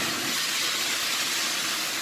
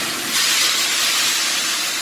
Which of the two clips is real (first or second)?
first